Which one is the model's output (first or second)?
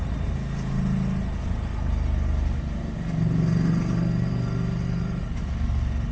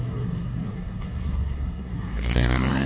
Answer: second